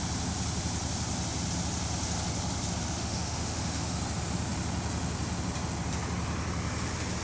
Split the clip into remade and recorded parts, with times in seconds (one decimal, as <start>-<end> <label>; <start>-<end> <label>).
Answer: 0.0-3.0 recorded; 3.0-4.0 remade; 4.0-7.2 recorded